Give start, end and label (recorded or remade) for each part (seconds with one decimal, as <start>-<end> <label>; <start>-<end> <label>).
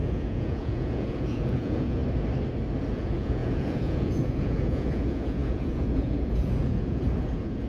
0.0-2.0 remade; 2.0-2.9 recorded; 2.9-7.7 remade